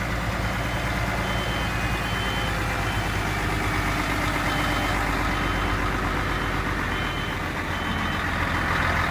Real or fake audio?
real